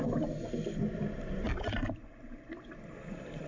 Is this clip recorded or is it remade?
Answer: recorded